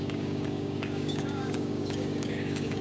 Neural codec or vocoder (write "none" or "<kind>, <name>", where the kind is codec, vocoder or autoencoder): codec, DAC